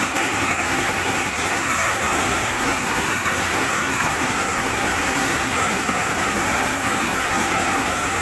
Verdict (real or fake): fake